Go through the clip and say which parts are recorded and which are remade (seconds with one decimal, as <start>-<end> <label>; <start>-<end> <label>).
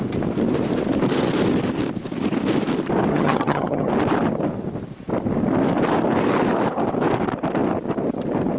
0.0-3.1 recorded; 3.1-3.9 remade; 3.9-8.6 recorded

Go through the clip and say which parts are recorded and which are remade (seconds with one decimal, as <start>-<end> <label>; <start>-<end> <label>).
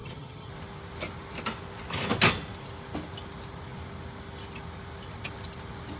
0.0-0.5 remade; 0.5-6.0 recorded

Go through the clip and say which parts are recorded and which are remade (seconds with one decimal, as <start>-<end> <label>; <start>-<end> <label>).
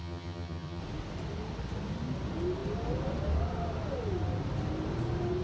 0.0-0.8 remade; 0.8-5.4 recorded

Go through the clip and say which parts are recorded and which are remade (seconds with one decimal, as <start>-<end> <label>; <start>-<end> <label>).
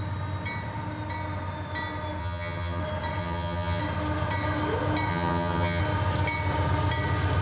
0.0-2.2 recorded; 2.2-2.8 remade; 2.8-3.2 recorded; 3.2-3.8 remade; 3.8-5.1 recorded; 5.1-5.8 remade; 5.8-7.4 recorded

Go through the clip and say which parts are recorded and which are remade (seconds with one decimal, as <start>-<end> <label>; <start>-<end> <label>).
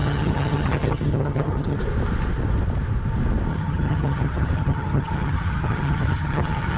0.0-1.8 remade; 1.8-3.5 recorded; 3.5-6.8 remade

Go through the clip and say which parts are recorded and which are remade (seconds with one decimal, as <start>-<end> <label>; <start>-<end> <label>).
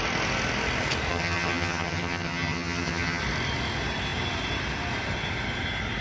0.0-1.1 recorded; 1.1-3.2 remade; 3.2-6.0 recorded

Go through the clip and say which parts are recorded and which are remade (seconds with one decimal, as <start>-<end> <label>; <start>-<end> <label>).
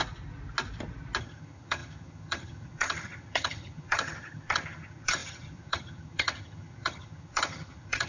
0.0-1.2 recorded; 1.2-8.1 remade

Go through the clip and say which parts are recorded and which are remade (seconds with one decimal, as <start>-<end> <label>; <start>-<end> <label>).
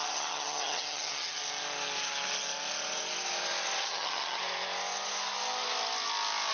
0.0-1.4 remade; 1.4-3.8 recorded; 3.8-4.4 remade; 4.4-6.5 recorded